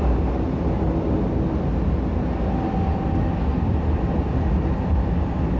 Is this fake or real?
real